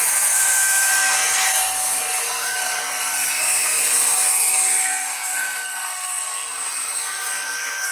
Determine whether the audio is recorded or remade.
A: remade